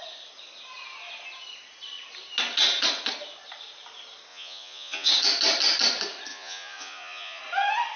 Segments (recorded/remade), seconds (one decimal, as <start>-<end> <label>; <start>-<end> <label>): 0.0-4.3 recorded; 4.3-5.1 remade; 5.1-6.3 recorded; 6.3-7.4 remade; 7.4-8.0 recorded